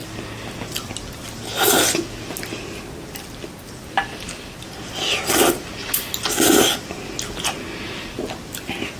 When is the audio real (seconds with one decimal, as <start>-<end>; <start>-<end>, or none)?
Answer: 0.0-9.0

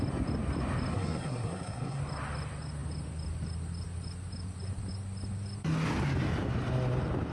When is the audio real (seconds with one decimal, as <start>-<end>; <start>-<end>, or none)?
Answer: 0.0-0.9; 2.0-7.3

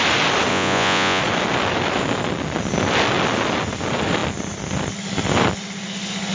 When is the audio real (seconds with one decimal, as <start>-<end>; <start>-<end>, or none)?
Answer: 0.0-0.5; 1.2-6.3

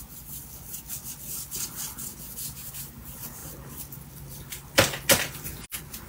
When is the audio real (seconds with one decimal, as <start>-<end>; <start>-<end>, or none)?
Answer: 0.0-2.1; 2.7-6.1

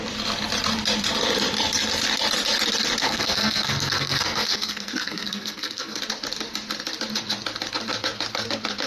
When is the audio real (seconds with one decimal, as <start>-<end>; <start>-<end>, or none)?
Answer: 0.0-3.0; 6.0-8.9

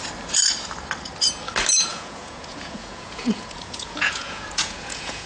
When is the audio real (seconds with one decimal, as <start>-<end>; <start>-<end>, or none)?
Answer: 0.0-1.9